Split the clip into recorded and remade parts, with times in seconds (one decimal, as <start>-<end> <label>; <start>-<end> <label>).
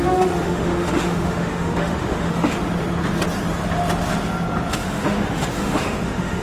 0.0-2.6 remade; 2.6-4.7 recorded; 4.7-6.4 remade